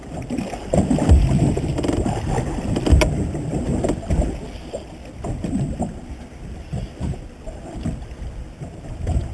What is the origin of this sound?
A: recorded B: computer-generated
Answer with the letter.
A